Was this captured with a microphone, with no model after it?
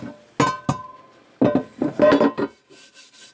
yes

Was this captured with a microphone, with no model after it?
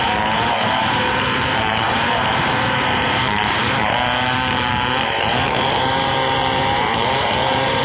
no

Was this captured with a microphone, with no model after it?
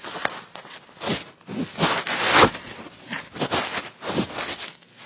yes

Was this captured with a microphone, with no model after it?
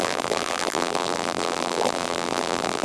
no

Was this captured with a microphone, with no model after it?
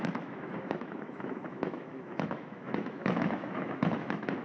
no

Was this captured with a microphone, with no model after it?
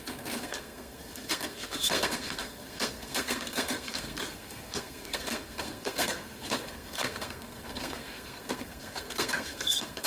no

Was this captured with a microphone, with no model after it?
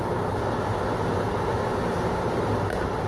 yes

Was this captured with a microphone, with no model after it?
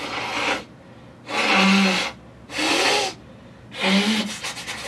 yes